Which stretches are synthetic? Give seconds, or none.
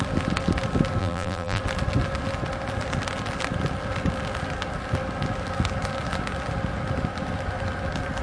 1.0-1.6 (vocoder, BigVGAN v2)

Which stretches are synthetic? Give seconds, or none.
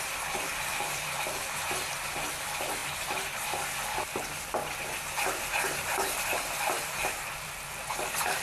0.0-2.8 (vocoder, BigVGAN v2); 7.1-8.4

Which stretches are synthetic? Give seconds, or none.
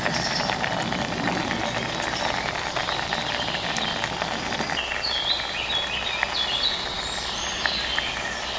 none